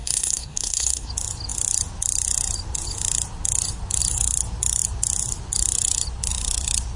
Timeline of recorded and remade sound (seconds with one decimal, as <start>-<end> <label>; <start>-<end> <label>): 0.0-1.1 remade; 1.1-7.0 recorded